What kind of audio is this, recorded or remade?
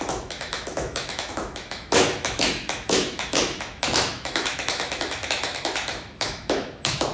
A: remade